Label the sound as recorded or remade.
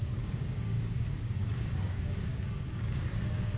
remade